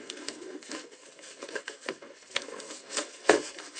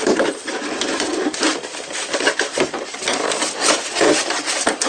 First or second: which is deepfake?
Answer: first